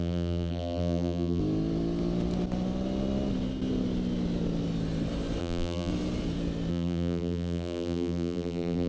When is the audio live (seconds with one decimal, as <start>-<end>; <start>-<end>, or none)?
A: 1.4-5.4; 5.9-6.7